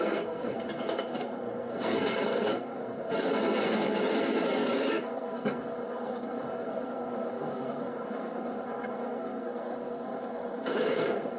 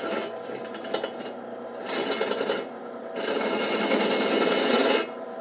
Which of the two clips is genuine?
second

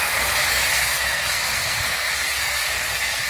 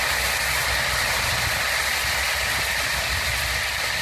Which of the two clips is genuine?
second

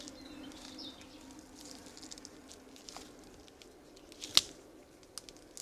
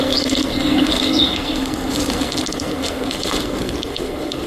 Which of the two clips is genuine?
first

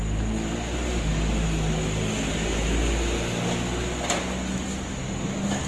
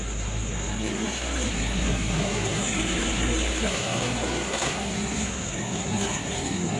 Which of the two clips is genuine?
first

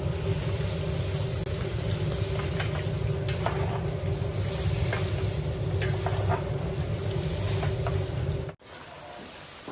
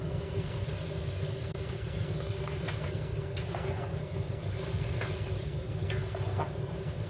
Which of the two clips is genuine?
first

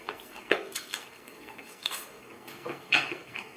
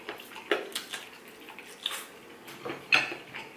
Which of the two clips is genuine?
second